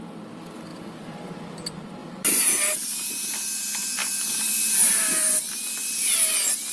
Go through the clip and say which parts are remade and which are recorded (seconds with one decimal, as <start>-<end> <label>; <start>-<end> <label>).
0.0-0.7 recorded; 0.7-1.3 remade; 1.3-2.0 recorded; 2.0-3.1 remade; 3.1-4.0 recorded; 4.0-5.4 remade; 5.4-6.0 recorded; 6.0-6.7 remade